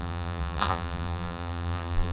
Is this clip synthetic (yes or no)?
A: yes